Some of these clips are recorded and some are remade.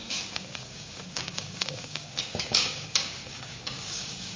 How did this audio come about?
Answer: remade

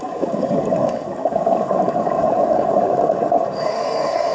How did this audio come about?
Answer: remade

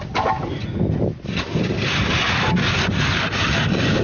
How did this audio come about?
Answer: recorded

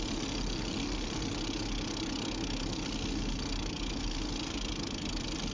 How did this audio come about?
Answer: recorded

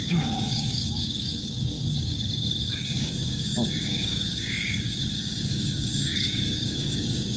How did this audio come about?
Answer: remade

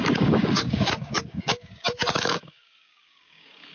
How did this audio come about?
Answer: remade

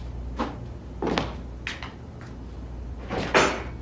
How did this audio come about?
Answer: recorded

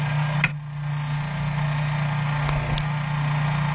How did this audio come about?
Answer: recorded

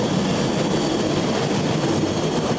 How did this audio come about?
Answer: recorded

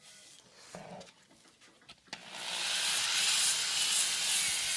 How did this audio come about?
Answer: recorded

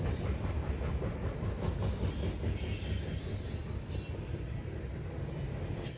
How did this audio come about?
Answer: recorded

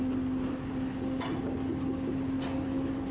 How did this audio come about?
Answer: recorded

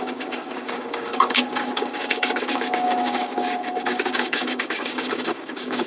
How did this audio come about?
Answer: remade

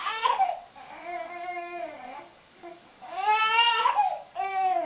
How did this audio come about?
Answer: remade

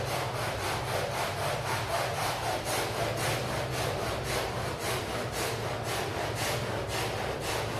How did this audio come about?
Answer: recorded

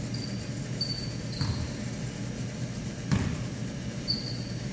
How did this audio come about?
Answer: recorded